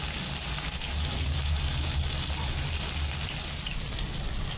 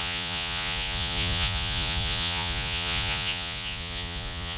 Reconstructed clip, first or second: second